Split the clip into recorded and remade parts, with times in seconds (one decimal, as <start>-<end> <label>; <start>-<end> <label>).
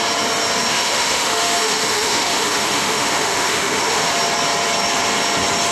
0.0-0.7 recorded; 0.7-4.1 remade; 4.1-5.7 recorded